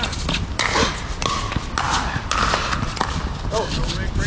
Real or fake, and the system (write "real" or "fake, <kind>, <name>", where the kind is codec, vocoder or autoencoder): real